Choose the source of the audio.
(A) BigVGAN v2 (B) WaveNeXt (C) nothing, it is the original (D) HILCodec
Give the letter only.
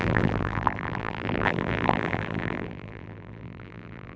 A